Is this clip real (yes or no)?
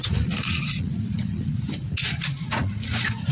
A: no